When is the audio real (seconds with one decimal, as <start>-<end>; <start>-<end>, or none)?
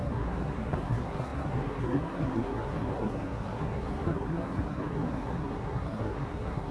none